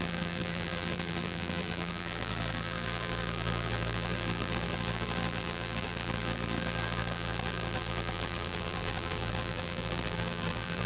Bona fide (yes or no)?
no